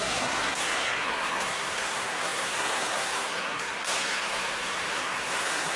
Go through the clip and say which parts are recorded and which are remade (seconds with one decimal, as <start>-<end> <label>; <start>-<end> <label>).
0.0-5.8 remade